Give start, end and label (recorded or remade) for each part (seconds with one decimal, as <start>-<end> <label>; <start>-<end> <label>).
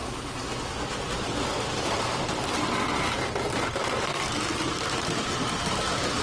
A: 0.0-6.2 recorded